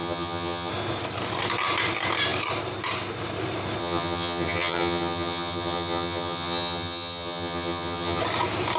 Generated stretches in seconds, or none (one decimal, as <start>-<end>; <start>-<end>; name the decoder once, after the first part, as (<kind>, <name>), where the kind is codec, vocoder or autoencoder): 0.0-0.7 (vocoder, HiFi-GAN); 3.8-8.2